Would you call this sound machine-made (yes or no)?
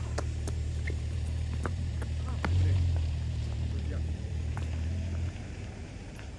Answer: yes